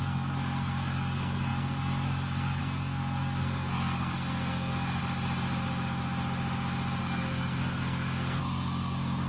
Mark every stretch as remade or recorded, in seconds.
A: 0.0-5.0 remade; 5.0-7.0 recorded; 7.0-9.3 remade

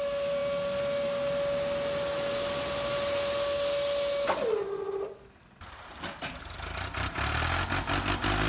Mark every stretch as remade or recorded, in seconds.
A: 0.0-8.5 recorded

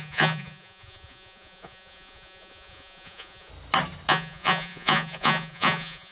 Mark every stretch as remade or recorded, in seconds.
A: 0.0-3.5 remade; 3.5-4.1 recorded; 4.1-6.1 remade

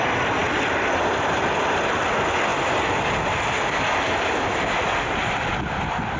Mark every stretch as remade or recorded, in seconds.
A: 0.0-6.2 recorded

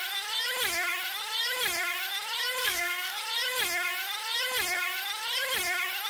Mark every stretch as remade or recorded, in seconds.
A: 0.0-2.6 recorded; 2.6-3.2 remade; 3.2-6.1 recorded